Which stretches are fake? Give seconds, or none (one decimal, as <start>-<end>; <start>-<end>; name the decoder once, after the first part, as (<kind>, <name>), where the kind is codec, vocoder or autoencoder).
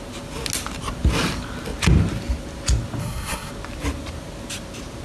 3.0-3.5 (codec, SNAC)